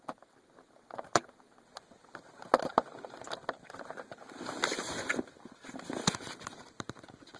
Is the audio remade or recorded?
recorded